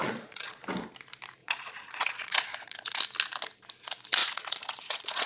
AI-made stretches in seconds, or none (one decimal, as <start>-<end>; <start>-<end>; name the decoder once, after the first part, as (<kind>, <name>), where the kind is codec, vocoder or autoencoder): 0.0-0.6 (vocoder, Vocos); 1.4-3.0; 4.2-5.3